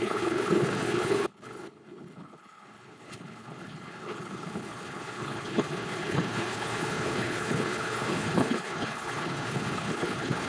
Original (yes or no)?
no